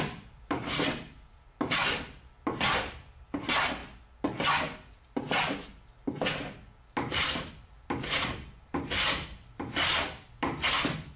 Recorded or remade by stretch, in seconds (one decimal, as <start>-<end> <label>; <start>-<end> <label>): 0.0-1.8 remade; 1.8-2.7 recorded; 2.7-3.8 remade; 3.8-7.1 recorded; 7.1-11.2 remade